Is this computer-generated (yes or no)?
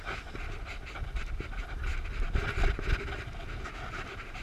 no